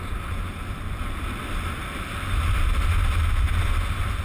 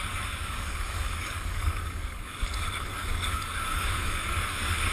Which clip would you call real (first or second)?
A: first